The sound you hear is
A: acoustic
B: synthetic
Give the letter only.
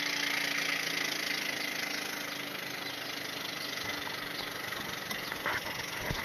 A